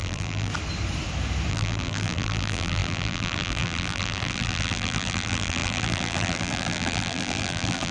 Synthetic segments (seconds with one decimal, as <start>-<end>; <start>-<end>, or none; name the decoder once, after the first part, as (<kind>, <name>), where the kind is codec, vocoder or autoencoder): 0.0-0.5 (vocoder, BigVGAN v2); 1.5-7.9